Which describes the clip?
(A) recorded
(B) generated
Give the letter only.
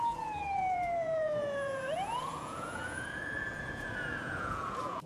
B